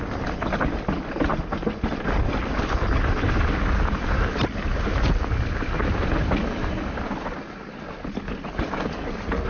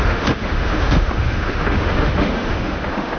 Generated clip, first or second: second